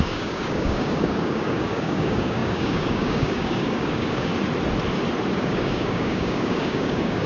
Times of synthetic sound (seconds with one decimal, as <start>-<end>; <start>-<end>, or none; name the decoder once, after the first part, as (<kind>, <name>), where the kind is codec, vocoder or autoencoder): 0.0-4.3 (codec, DAC); 5.3-7.3